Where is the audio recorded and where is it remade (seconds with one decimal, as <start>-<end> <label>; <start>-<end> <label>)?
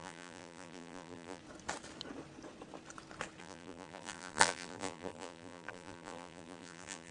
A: 0.0-1.4 remade; 1.4-3.4 recorded; 3.4-7.1 remade